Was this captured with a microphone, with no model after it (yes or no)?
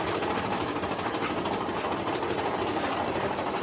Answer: no